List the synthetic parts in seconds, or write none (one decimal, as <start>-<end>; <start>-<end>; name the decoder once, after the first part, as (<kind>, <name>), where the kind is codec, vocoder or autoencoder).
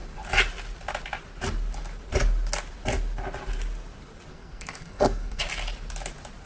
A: 4.3-5.4 (codec, SNAC)